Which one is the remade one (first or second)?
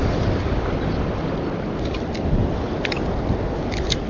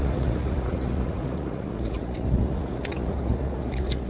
second